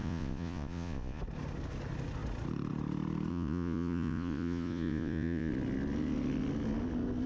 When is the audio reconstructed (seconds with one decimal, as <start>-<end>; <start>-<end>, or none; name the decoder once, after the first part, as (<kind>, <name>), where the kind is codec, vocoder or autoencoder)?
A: 0.0-1.2 (vocoder, Vocos); 3.3-5.5